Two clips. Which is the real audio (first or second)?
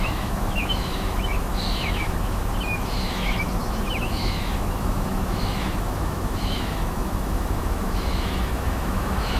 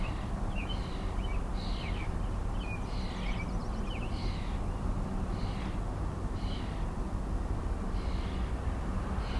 second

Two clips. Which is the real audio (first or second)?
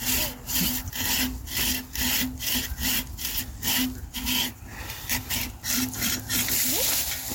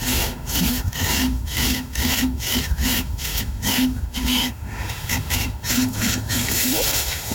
first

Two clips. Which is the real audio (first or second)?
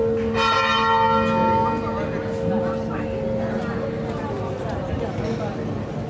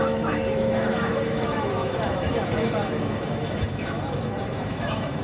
first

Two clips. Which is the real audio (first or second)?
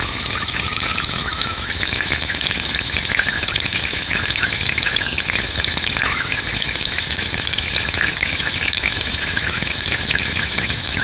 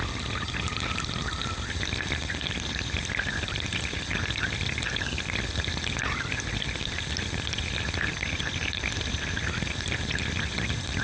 second